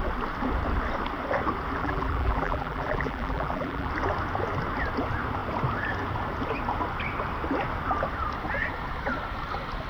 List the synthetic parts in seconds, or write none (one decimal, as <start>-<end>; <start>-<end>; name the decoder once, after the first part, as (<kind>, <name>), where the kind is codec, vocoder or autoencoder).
1.8-3.9 (vocoder, BigVGAN v2)